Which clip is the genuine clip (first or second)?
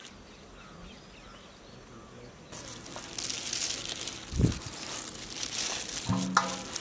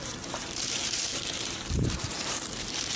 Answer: first